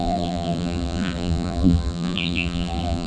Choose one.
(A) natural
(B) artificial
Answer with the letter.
B